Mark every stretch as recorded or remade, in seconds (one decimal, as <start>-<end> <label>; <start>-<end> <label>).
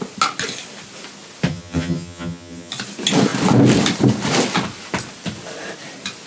0.0-1.5 recorded; 1.5-2.7 remade; 2.7-6.3 recorded